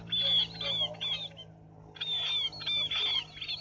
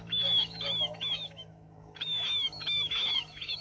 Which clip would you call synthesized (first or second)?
second